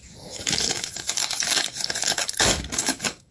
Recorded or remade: remade